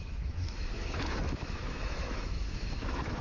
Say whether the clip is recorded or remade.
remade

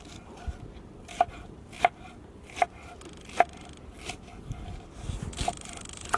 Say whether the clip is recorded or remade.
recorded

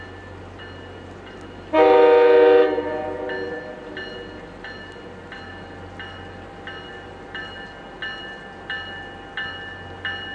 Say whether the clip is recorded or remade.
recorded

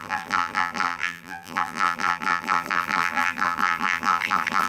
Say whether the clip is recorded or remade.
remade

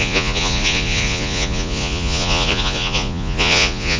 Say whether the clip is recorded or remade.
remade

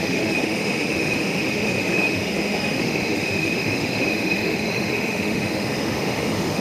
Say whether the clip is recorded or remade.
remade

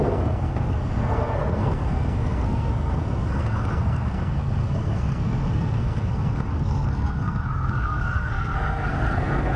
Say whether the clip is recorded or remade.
remade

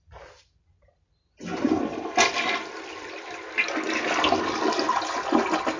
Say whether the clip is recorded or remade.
recorded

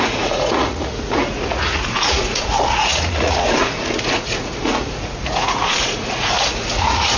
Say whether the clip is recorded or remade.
remade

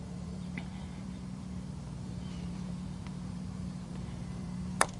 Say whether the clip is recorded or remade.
remade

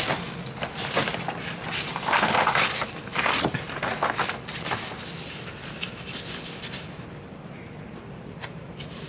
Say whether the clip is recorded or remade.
recorded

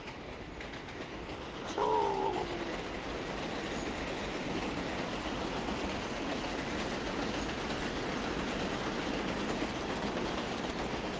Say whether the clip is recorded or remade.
recorded